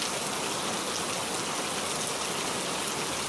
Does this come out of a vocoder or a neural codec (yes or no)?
no